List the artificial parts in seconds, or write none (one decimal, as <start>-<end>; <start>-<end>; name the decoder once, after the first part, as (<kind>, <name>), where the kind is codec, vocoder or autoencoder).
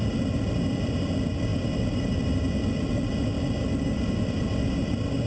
none